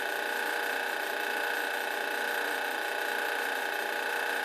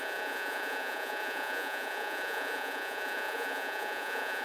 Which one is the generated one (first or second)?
second